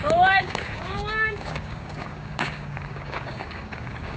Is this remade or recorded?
remade